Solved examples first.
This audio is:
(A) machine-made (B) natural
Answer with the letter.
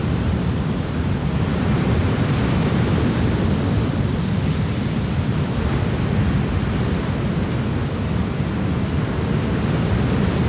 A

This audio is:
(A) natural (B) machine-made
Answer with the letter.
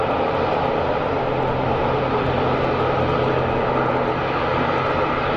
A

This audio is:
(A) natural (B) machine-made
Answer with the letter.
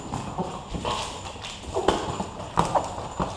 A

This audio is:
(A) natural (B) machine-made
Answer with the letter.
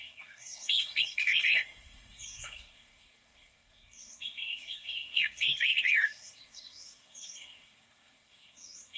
B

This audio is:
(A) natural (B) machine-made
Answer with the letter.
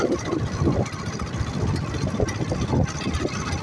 A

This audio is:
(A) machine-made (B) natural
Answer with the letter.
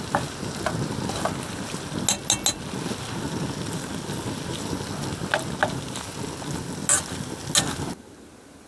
B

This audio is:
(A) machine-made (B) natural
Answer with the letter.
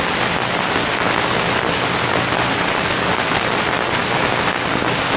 B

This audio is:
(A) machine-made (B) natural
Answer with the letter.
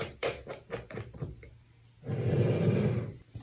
B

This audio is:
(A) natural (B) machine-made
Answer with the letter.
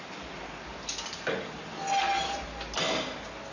A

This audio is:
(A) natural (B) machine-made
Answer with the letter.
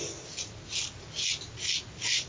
A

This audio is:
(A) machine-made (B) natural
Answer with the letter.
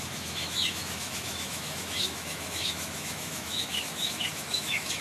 A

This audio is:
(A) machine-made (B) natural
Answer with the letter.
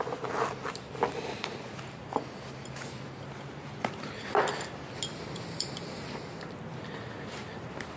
B